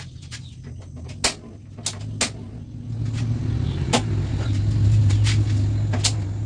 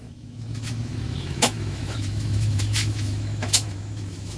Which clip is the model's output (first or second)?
second